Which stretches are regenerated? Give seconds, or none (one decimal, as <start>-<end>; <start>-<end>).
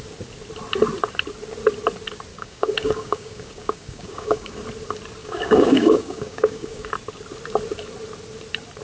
2.3-4.6; 5.2-6.9